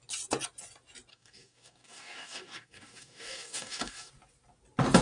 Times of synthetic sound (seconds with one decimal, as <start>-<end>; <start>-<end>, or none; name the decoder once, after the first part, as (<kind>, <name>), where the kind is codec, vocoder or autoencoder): 1.1-4.1 (codec, DAC)